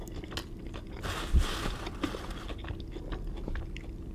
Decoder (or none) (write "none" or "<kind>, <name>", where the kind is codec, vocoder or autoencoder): none